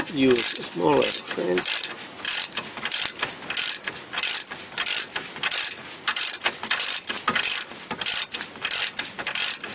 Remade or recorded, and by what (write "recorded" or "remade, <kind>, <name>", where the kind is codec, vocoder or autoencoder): recorded